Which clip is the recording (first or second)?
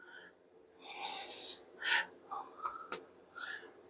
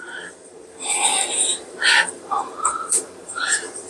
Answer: first